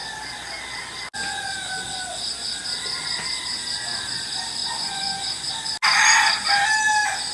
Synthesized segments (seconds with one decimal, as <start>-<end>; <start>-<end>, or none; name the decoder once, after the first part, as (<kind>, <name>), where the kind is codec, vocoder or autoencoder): 4.6-5.5 (vocoder, Vocos)